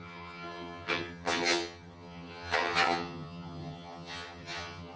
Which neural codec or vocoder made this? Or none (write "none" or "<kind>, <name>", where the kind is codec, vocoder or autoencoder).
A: vocoder, HiFi-GAN